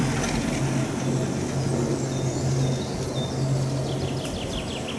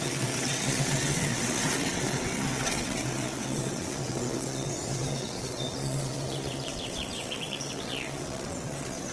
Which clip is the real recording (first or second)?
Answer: first